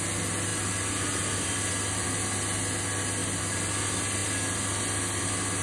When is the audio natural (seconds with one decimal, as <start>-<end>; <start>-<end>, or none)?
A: 0.0-5.6